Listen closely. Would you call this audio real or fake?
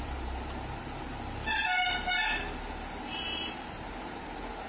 real